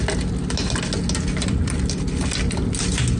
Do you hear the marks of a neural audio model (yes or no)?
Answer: no